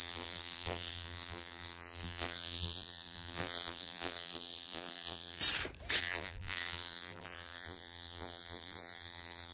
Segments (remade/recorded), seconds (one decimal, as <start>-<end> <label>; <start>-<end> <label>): 0.0-5.4 remade; 5.4-6.0 recorded; 6.0-9.5 remade

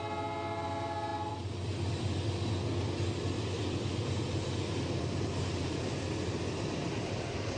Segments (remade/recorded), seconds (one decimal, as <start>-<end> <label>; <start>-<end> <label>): 0.0-5.6 recorded; 5.6-7.1 remade; 7.1-7.6 recorded